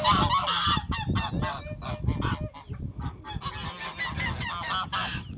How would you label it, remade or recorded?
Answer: recorded